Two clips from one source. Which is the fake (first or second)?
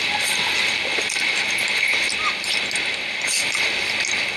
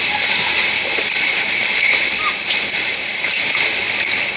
second